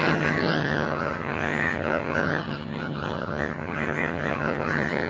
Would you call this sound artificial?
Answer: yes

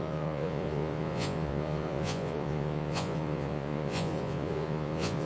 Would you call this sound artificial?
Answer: yes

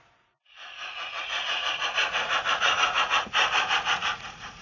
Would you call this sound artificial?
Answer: yes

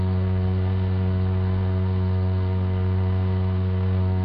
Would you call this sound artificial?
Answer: yes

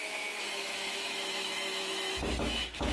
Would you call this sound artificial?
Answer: yes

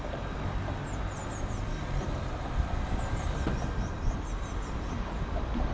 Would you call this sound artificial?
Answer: no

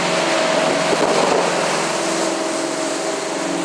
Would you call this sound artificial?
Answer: no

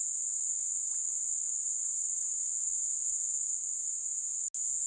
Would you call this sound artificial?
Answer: no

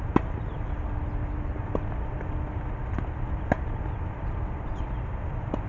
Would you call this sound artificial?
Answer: no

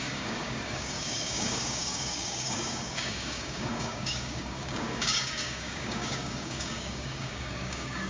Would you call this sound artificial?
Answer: yes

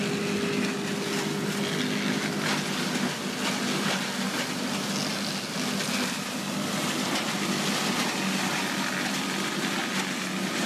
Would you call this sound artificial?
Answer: no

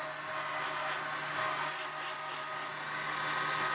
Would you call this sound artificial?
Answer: no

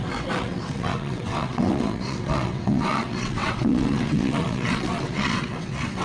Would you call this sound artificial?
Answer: yes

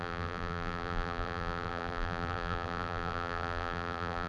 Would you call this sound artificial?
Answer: yes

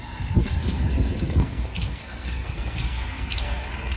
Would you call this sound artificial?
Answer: yes